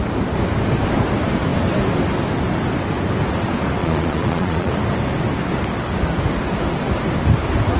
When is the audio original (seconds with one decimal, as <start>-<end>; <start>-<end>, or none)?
0.0-3.8; 4.7-7.8

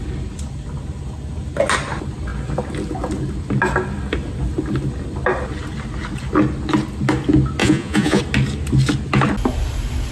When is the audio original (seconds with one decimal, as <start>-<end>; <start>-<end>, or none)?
0.0-7.6; 8.2-10.1

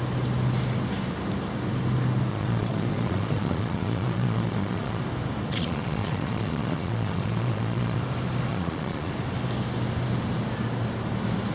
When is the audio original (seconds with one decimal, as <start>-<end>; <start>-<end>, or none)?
0.0-2.3; 5.0-5.5; 8.0-8.5; 9.1-11.5

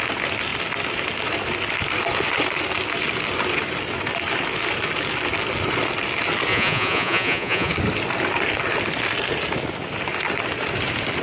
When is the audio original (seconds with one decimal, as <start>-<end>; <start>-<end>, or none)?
0.0-6.5; 7.7-11.2

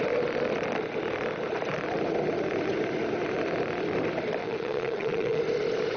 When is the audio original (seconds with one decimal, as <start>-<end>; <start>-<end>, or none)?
0.0-4.4; 5.4-6.0

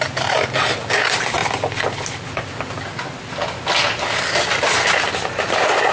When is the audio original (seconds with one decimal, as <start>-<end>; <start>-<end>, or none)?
0.0-5.9